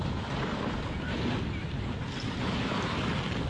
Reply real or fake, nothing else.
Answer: real